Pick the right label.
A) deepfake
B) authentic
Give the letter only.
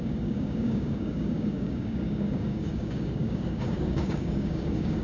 A